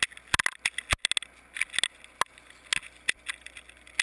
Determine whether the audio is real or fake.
real